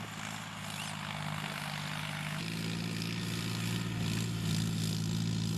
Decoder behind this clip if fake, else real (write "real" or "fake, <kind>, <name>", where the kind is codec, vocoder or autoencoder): real